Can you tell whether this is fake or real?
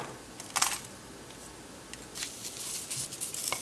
real